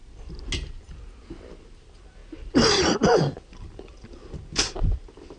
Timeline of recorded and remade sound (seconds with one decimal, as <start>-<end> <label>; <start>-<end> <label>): 0.0-1.6 recorded; 1.6-5.4 remade